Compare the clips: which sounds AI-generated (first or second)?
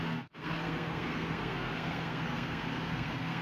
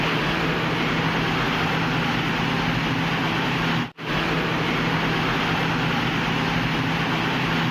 first